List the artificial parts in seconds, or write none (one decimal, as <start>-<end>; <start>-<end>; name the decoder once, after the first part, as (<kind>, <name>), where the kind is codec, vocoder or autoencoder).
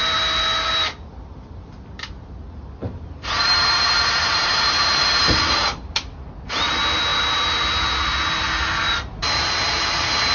2.8-5.9 (vocoder, BigVGAN v2)